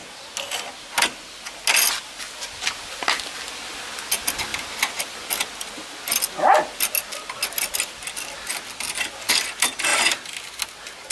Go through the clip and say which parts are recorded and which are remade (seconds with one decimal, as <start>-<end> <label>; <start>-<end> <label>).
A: 0.0-11.1 recorded